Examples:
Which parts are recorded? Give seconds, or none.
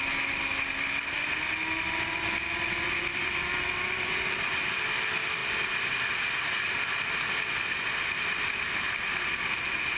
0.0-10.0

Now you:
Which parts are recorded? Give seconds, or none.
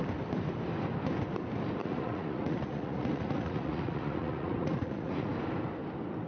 0.0-1.8; 5.3-6.3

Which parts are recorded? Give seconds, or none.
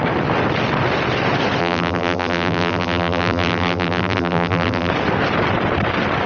0.0-1.6; 4.9-6.3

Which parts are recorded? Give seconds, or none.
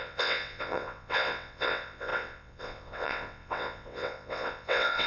none